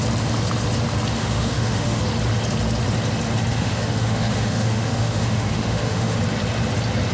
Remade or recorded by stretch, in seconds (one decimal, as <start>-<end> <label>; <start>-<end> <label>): 0.0-1.2 recorded; 1.2-2.0 remade; 2.0-3.5 recorded; 3.5-6.2 remade; 6.2-7.1 recorded